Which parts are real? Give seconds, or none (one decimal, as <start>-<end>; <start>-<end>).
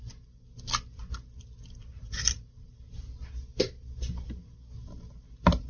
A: 0.0-1.9; 3.2-5.7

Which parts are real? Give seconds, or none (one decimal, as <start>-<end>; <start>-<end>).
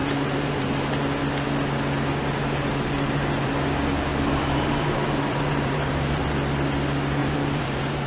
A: 0.9-2.7; 3.5-4.1; 6.3-7.2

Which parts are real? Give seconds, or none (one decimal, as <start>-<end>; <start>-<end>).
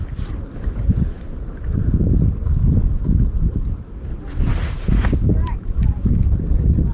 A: 0.0-4.5; 6.2-6.9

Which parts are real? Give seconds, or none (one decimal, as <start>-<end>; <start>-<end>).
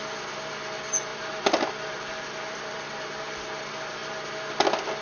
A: 0.0-1.1; 2.9-5.0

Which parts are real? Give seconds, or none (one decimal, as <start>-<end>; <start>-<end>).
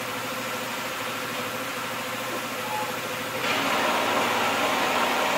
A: 0.0-5.4